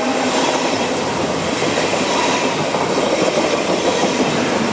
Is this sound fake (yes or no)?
yes